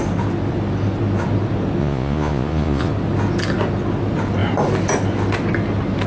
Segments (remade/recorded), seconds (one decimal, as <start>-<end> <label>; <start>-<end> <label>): 0.0-1.8 recorded; 1.8-2.9 remade; 2.9-6.1 recorded